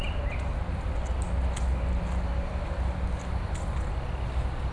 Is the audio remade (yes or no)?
no